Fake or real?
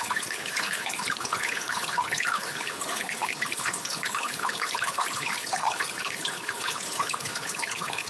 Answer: fake